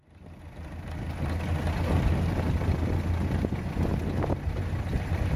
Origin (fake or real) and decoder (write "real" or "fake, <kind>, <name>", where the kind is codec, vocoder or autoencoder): real